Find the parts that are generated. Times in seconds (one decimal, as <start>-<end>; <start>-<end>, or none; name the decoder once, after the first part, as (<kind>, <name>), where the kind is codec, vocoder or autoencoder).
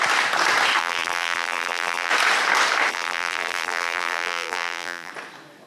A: 0.8-2.1 (vocoder, BigVGAN v2); 2.9-5.1